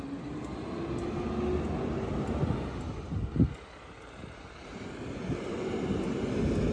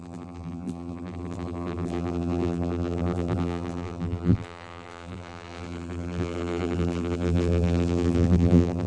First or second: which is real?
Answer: first